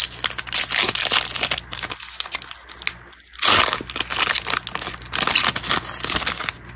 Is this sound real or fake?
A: real